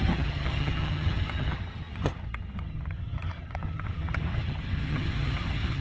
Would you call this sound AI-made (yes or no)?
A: yes